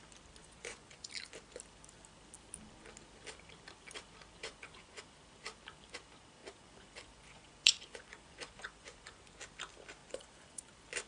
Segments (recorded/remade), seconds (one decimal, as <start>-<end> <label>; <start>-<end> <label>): 0.0-0.4 recorded; 0.4-1.1 remade; 1.1-4.4 recorded; 4.4-5.0 remade; 5.0-6.4 recorded; 6.4-9.3 remade; 9.3-10.0 recorded; 10.0-10.7 remade; 10.7-11.1 recorded